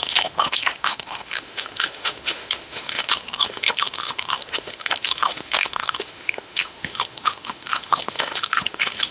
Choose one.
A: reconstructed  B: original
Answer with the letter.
A